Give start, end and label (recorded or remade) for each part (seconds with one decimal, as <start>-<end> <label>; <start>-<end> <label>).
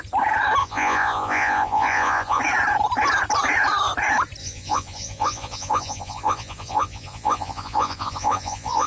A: 0.0-0.6 recorded; 0.6-2.4 remade; 2.4-4.4 recorded; 4.4-8.9 remade